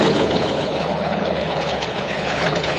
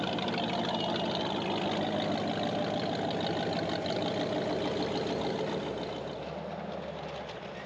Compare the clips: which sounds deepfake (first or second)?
first